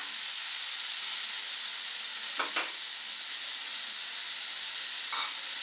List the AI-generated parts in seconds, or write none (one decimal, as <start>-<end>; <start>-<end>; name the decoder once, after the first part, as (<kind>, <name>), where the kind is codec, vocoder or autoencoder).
none